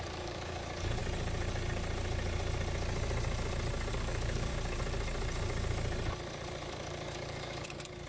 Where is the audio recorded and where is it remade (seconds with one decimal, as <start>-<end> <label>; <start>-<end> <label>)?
0.0-1.0 remade; 1.0-3.9 recorded; 3.9-4.5 remade; 4.5-6.7 recorded; 6.7-8.1 remade